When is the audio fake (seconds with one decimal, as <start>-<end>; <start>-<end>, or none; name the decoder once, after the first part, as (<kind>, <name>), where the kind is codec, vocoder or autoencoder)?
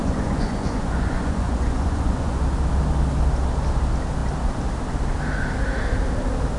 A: 0.0-2.4 (vocoder, Vocos)